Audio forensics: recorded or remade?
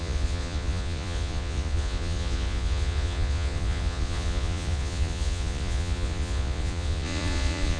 remade